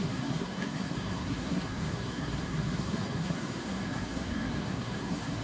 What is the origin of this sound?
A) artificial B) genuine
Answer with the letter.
A